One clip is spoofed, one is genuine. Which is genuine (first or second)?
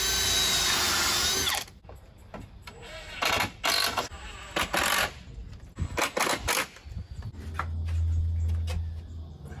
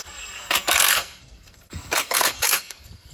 first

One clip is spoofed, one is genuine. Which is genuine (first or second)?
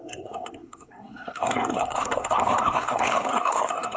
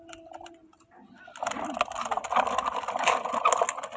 second